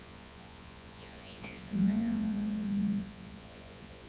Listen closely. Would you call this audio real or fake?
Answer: fake